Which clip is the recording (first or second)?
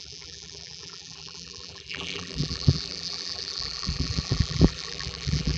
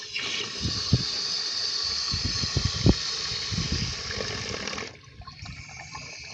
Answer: second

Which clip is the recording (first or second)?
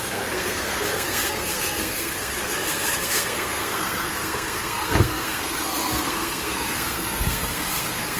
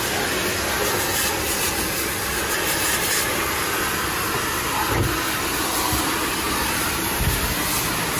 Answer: second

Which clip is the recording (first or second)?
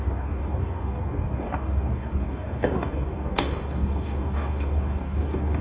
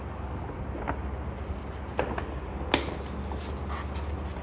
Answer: second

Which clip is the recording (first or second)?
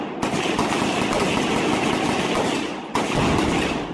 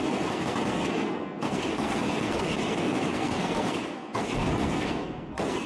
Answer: first